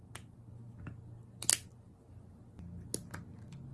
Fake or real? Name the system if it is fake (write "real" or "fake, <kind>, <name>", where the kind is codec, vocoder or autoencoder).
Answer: real